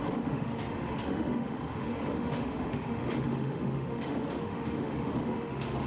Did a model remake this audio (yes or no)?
yes